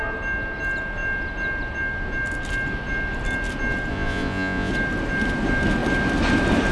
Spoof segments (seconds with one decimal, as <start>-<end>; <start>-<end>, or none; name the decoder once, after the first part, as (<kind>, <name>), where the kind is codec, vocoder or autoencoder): 3.9-4.7 (vocoder, Vocos)